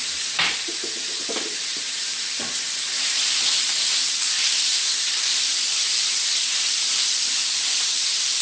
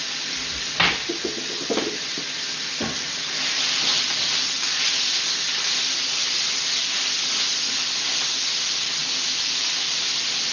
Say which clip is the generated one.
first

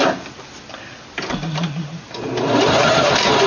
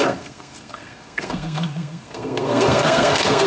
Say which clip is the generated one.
second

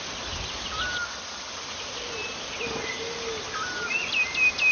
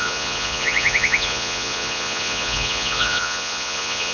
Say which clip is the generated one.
second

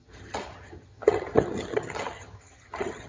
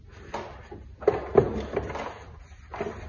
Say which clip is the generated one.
first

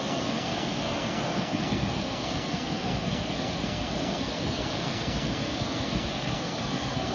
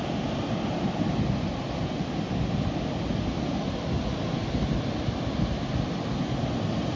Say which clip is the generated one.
first